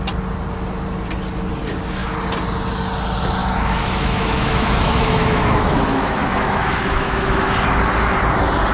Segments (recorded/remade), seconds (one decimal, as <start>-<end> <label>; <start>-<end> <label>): 0.0-3.4 recorded; 3.4-7.5 remade; 7.5-8.7 recorded